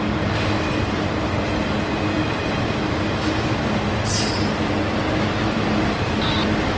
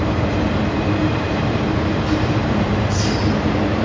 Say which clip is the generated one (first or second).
second